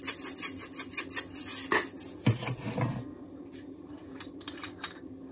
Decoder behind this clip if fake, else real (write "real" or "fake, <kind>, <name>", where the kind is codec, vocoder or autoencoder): real